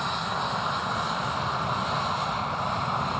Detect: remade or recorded recorded